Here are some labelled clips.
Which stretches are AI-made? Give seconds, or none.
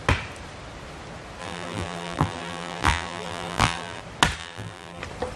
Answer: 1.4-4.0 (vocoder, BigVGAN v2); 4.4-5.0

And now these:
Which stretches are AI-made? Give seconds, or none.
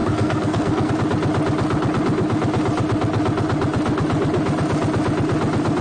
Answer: 0.0-0.9 (codec, SNAC)